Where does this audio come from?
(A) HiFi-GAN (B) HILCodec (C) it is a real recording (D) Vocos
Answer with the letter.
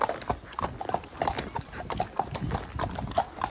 C